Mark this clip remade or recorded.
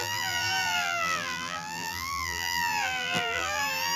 remade